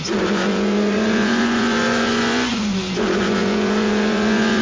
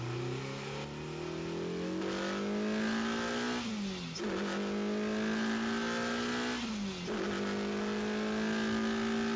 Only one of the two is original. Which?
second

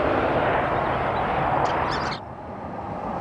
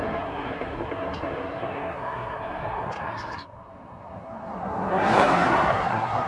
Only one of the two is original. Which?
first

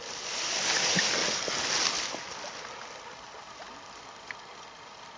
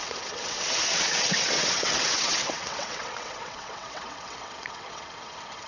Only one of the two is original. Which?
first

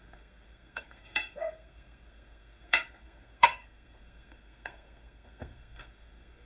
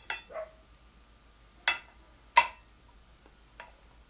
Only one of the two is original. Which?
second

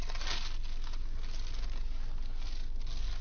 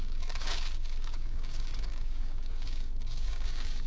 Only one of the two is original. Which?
first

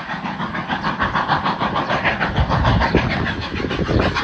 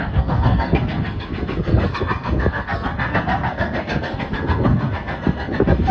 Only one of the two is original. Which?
first